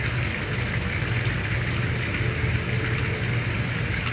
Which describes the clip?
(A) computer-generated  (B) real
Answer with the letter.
B